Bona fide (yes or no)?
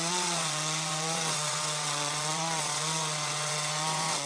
no